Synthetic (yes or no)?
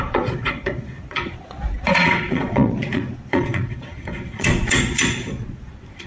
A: yes